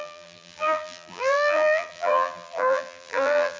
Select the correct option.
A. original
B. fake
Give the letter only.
B